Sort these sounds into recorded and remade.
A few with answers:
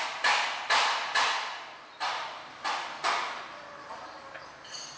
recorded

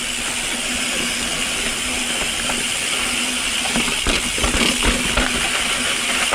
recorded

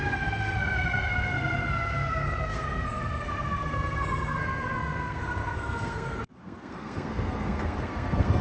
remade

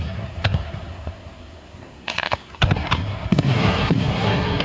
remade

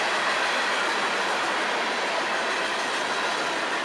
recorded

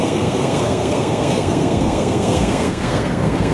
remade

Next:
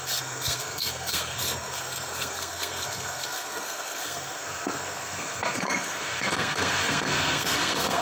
remade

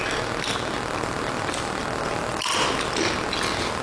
recorded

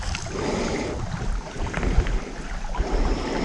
recorded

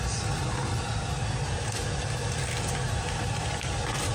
recorded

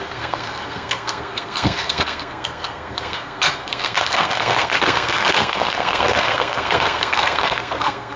remade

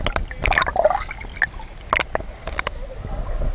recorded